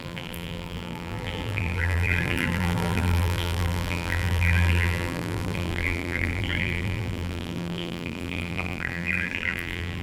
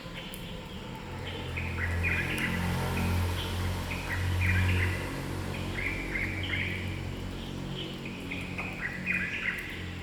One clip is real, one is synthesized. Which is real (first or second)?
second